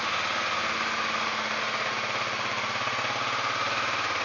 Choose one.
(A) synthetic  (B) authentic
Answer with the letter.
B